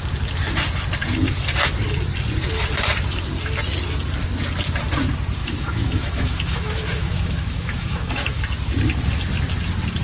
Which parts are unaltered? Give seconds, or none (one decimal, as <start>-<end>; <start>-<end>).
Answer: 0.0-5.4; 8.4-10.0